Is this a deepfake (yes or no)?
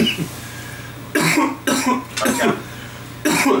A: no